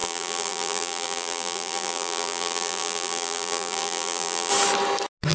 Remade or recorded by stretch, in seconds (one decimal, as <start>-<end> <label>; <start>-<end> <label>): 0.0-4.5 remade; 4.5-5.3 recorded